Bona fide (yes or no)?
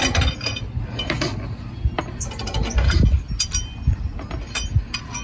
yes